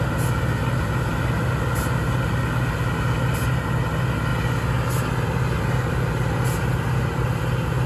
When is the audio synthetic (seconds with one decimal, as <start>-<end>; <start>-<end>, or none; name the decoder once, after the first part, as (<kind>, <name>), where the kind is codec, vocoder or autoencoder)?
none